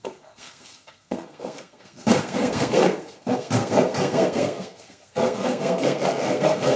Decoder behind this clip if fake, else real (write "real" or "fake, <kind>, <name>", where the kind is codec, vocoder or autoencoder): fake, codec, SNAC